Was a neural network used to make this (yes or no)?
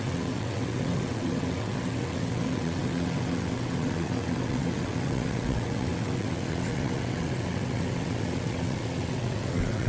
yes